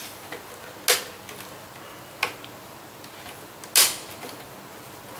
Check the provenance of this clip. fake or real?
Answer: real